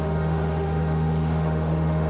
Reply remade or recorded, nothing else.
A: remade